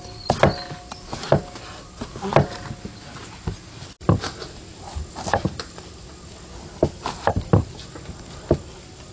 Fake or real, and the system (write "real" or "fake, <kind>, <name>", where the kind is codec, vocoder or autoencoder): real